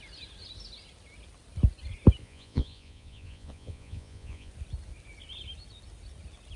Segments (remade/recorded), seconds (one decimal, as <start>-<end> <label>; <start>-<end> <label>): 0.0-2.2 recorded; 2.2-4.5 remade; 4.5-6.6 recorded